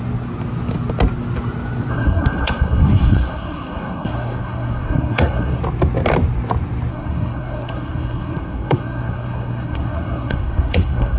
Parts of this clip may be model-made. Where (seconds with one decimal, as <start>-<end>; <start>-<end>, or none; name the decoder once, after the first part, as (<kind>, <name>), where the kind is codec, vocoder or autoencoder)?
1.9-5.6 (codec, SNAC); 6.9-11.2